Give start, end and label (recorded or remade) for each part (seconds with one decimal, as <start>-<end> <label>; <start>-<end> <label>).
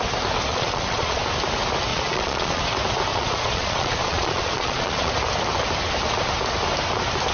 0.0-0.5 recorded; 0.5-1.2 remade; 1.2-1.9 recorded; 1.9-2.6 remade; 2.6-3.1 recorded; 3.1-5.1 remade; 5.1-7.3 recorded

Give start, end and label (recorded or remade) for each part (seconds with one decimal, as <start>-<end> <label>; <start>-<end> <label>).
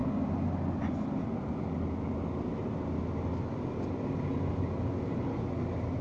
0.0-6.0 recorded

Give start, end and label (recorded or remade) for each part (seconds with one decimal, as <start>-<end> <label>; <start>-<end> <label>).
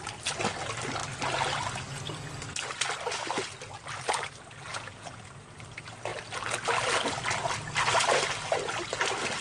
0.0-4.7 recorded; 4.7-5.2 remade; 5.2-9.4 recorded